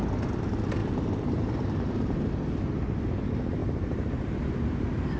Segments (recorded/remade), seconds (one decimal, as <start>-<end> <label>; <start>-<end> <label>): 0.0-0.8 recorded; 0.8-2.3 remade; 2.3-3.6 recorded; 3.6-5.2 remade

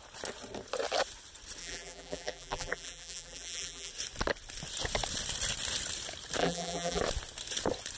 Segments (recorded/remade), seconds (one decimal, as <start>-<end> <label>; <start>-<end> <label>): 0.0-1.6 recorded; 1.6-3.9 remade; 3.9-6.4 recorded; 6.4-7.0 remade; 7.0-8.0 recorded